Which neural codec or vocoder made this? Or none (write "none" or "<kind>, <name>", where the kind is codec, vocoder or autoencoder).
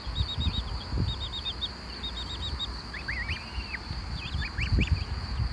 none